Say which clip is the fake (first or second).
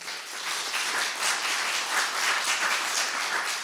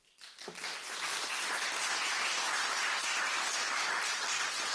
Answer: second